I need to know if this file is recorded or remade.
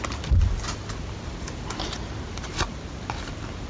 recorded